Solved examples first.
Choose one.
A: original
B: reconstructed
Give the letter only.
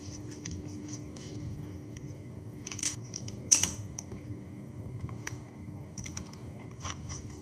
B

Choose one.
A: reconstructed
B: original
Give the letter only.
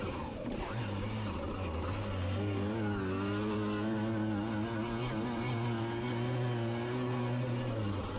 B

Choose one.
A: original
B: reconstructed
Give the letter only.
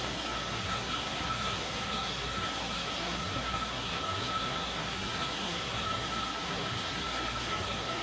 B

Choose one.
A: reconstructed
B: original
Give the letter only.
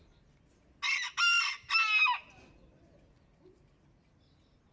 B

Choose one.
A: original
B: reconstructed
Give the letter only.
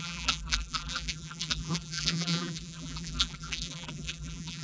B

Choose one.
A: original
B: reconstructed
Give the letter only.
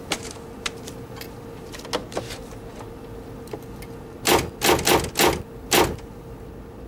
A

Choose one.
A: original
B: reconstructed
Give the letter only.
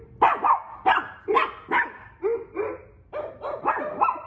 A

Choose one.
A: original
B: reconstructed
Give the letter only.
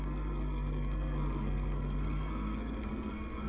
B